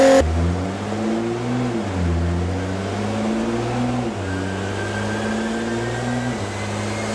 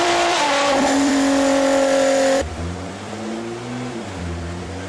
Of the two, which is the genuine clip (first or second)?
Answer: first